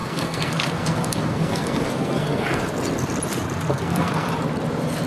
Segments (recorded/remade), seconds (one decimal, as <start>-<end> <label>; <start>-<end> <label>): 0.0-2.7 remade; 2.7-3.7 recorded; 3.7-4.3 remade; 4.3-5.1 recorded